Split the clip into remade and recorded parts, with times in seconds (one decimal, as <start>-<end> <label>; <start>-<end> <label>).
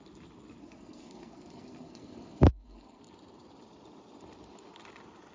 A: 0.0-0.6 recorded; 0.6-3.0 remade; 3.0-5.3 recorded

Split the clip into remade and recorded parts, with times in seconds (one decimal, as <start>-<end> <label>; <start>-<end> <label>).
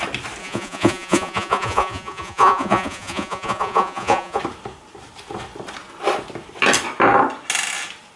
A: 0.0-0.4 recorded; 0.4-4.4 remade; 4.4-8.2 recorded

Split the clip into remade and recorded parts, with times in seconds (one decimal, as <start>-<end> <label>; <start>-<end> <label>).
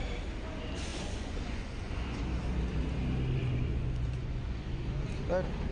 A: 0.0-0.9 recorded; 0.9-2.2 remade; 2.2-3.4 recorded; 3.4-5.1 remade; 5.1-5.7 recorded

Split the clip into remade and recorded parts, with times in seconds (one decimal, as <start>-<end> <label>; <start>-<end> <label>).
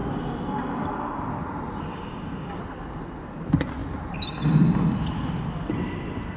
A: 0.0-1.9 recorded; 1.9-2.6 remade; 2.6-6.4 recorded